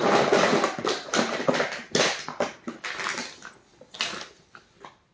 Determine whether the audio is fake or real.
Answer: real